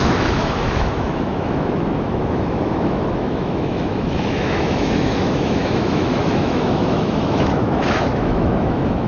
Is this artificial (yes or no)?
yes